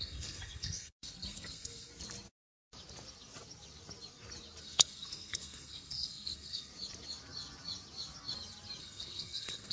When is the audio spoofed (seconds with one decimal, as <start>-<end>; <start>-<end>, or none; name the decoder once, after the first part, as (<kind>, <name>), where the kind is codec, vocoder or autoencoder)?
0.0-1.9 (codec, SNAC); 4.6-6.7; 8.8-9.7